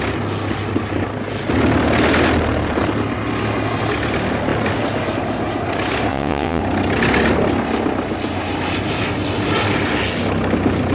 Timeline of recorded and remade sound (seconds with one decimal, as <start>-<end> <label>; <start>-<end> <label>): 0.0-6.1 recorded; 6.1-6.6 remade; 6.6-10.9 recorded